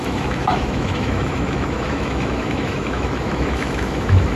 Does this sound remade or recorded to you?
remade